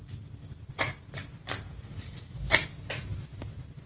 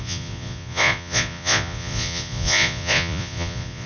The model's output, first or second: second